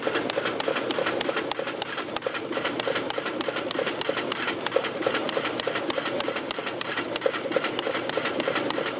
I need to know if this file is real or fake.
real